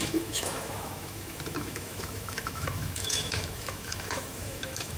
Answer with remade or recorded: remade